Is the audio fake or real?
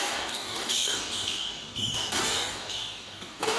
fake